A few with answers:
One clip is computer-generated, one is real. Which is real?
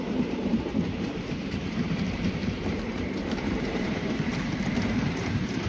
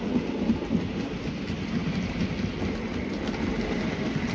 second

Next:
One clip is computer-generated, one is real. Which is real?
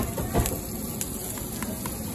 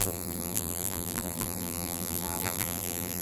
first